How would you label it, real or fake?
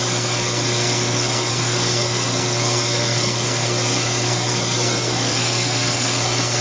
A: fake